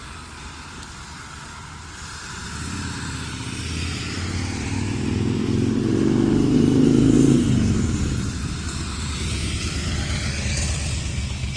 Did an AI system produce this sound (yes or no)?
no